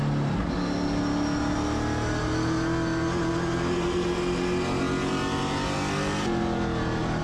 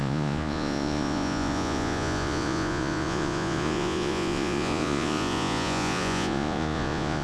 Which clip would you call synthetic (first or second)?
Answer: second